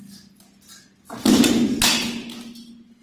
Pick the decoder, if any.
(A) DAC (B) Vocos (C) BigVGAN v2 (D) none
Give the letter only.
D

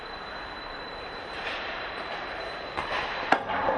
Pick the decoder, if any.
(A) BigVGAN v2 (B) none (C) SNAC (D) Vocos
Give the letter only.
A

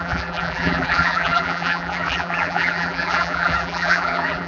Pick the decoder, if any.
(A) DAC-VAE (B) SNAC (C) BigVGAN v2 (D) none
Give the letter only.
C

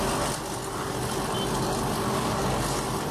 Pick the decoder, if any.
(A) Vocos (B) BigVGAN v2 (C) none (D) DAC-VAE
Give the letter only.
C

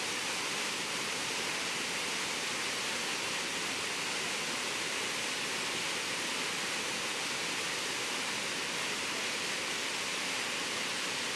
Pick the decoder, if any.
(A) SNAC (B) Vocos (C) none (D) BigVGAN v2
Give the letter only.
C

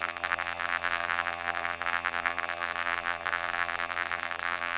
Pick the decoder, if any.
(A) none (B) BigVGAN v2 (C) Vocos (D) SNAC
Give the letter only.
B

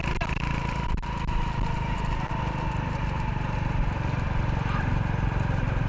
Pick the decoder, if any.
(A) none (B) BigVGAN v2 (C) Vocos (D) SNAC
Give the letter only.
B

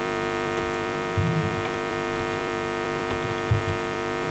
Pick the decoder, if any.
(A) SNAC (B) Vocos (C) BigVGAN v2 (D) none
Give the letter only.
C